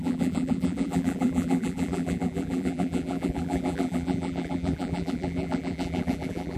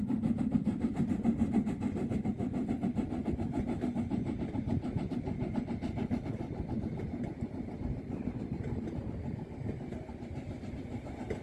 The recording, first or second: second